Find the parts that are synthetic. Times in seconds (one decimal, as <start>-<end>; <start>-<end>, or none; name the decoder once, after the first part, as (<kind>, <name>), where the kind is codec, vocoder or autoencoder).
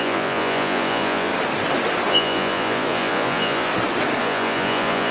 0.0-1.3 (vocoder, Vocos); 2.1-3.7; 4.2-5.1